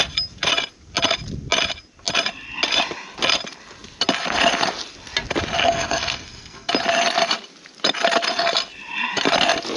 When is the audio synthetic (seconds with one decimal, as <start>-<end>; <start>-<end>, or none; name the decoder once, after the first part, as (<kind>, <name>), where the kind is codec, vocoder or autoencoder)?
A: 5.6-6.7 (codec, SNAC)